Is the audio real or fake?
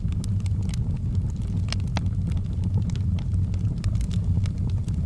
real